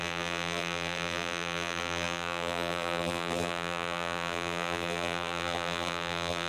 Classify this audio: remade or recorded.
remade